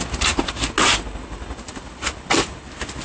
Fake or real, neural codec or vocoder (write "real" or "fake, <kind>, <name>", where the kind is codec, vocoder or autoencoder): real